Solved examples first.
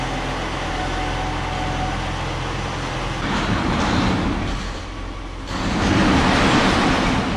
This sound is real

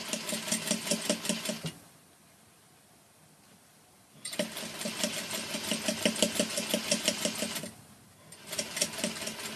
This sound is real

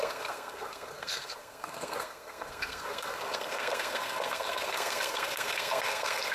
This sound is fake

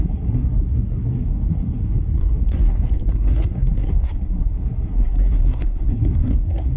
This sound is fake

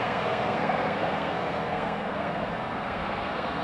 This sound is fake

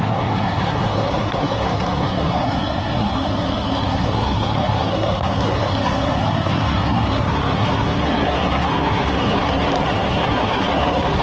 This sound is fake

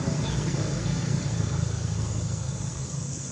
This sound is fake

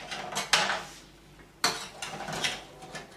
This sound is real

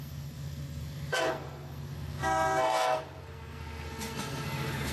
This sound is fake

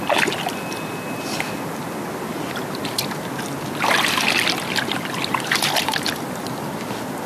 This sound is real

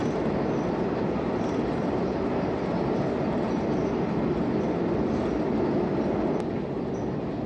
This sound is real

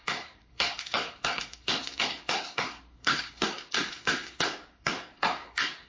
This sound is fake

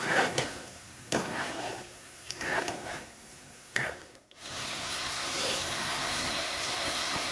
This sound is fake